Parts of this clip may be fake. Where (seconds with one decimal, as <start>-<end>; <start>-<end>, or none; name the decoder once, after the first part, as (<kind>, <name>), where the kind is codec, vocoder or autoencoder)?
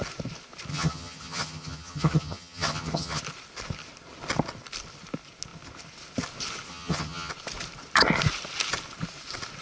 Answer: 0.7-3.2 (vocoder, HiFi-GAN); 6.7-7.3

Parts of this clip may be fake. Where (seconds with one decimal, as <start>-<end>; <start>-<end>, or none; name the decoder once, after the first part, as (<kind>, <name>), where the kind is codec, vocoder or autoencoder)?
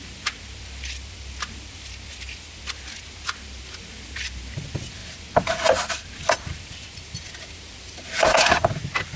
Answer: none